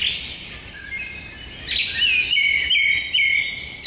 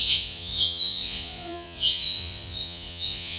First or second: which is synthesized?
second